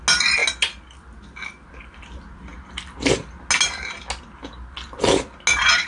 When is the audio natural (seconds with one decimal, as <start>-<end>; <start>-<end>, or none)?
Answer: 0.0-5.9